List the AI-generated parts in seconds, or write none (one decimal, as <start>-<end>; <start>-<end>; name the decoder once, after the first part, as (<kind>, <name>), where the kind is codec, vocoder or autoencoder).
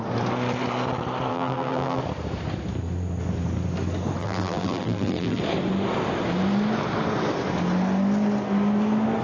1.3-2.0 (vocoder, BigVGAN v2); 4.2-5.4